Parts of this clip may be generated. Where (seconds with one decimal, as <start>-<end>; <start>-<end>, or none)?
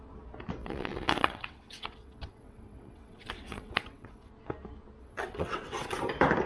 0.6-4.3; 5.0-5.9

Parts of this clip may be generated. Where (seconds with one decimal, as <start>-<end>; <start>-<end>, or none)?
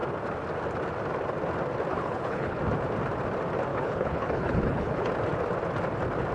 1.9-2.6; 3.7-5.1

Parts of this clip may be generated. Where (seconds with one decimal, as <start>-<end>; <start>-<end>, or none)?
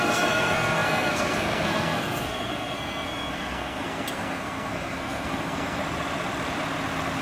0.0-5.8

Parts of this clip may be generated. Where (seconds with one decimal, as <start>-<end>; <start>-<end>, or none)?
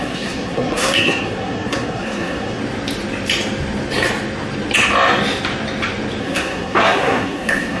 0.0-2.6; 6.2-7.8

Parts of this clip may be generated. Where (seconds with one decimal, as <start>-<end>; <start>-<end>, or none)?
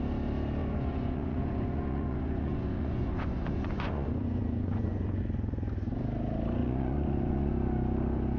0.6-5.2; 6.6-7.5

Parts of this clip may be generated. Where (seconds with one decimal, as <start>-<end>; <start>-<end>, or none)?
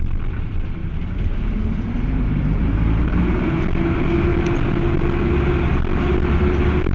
0.8-3.2